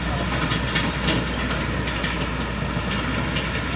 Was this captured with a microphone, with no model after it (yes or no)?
yes